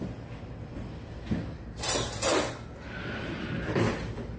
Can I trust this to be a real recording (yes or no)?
yes